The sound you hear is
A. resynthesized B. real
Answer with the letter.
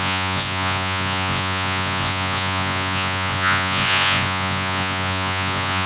A